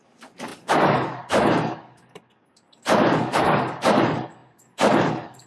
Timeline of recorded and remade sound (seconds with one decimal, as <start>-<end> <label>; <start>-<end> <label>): 0.0-5.5 remade